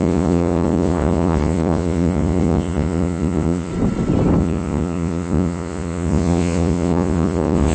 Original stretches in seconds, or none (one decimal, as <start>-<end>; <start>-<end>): 3.7-4.4